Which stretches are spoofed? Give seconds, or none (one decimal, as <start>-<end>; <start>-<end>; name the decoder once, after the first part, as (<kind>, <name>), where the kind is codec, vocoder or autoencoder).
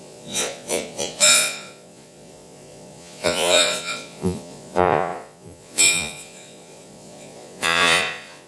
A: 0.0-8.5 (vocoder, Vocos)